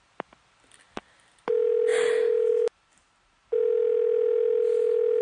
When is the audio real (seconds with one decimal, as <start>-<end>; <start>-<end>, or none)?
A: 0.0-1.9; 2.5-5.2